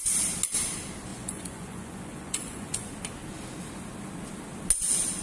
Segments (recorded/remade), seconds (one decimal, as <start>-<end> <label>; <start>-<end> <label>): 0.0-1.1 recorded; 1.1-2.9 remade; 2.9-5.2 recorded